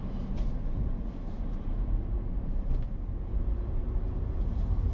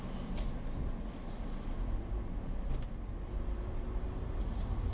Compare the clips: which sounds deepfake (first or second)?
first